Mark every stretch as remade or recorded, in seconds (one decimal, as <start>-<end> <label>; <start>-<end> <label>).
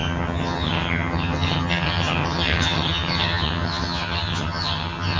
0.0-5.2 remade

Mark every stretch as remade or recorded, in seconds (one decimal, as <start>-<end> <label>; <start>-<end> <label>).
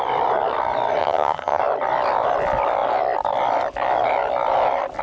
0.0-1.0 recorded; 1.0-1.6 remade; 1.6-5.0 recorded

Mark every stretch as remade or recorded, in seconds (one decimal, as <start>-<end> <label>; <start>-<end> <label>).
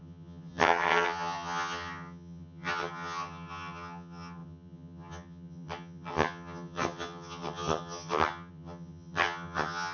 0.0-9.9 remade